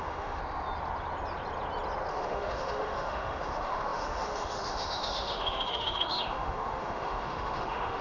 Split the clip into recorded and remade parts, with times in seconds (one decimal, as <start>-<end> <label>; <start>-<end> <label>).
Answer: 0.0-0.4 remade; 0.4-2.1 recorded; 2.1-8.0 remade